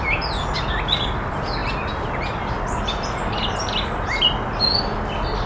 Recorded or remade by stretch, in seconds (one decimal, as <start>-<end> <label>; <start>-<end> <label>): 0.0-5.5 recorded